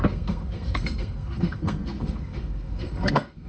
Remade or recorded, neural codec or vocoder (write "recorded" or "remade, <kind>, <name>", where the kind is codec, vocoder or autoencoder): remade, codec, SNAC